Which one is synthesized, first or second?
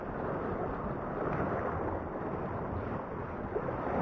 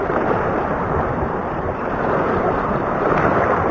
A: second